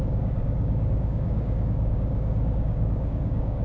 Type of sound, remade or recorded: remade